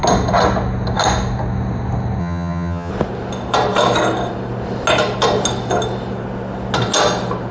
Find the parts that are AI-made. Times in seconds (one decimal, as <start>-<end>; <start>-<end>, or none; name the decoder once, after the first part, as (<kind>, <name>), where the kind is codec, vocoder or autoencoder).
2.2-2.9 (vocoder, HiFi-GAN)